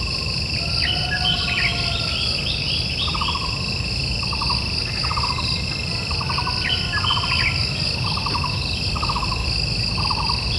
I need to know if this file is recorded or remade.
recorded